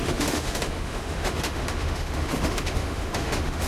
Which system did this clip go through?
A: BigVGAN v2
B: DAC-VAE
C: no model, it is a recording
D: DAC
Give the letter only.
B